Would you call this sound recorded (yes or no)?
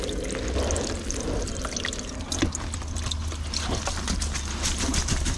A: yes